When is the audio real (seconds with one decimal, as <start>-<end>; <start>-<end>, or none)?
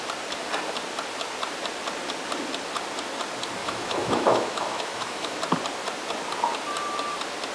0.0-3.6; 5.4-7.5